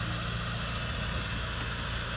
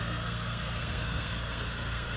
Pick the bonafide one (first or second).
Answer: first